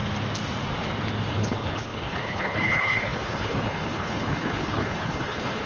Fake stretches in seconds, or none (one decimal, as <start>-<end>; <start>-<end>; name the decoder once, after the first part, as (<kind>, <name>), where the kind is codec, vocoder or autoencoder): 1.3-5.7 (codec, HILCodec)